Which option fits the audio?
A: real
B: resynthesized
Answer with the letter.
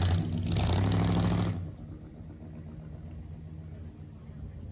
A